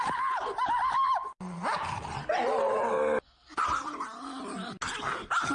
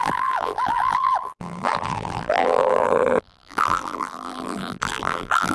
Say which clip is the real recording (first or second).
first